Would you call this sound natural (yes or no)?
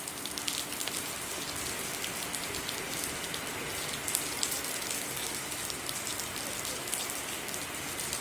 yes